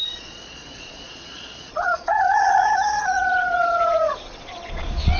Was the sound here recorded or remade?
remade